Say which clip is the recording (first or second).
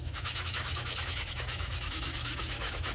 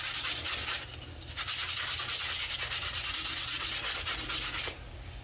second